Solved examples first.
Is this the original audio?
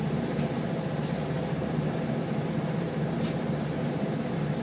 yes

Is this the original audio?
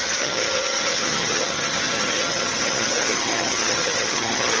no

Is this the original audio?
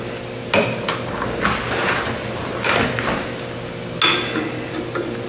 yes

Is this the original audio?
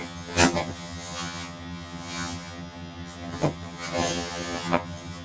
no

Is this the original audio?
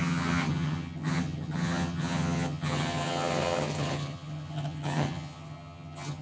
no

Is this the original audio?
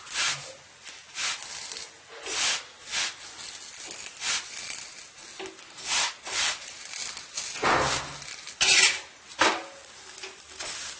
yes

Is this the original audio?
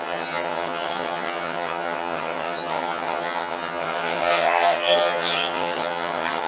no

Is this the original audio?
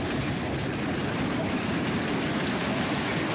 yes